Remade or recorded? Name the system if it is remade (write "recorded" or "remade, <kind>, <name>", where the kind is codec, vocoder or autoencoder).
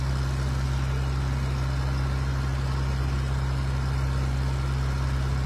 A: recorded